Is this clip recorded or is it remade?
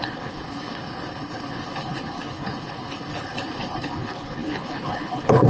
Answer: remade